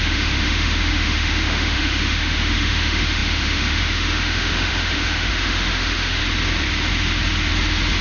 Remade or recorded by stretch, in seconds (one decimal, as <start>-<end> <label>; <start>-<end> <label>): 0.0-6.2 remade; 6.2-8.0 recorded